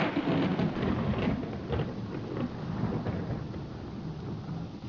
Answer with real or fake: real